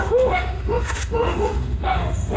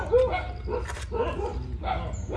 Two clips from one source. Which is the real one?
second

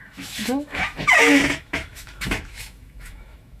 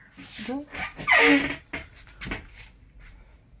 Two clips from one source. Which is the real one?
second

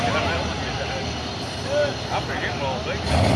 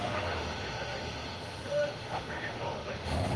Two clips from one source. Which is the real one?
first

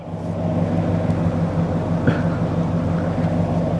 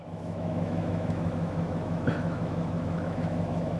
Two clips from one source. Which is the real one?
first